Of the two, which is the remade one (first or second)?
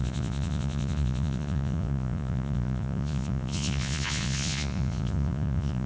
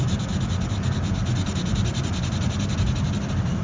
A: first